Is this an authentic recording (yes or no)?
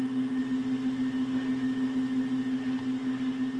yes